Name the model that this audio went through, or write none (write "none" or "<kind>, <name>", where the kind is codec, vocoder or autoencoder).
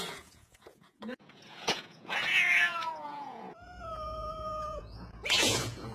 vocoder, Vocos